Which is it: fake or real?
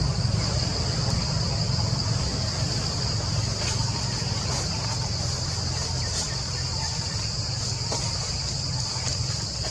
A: real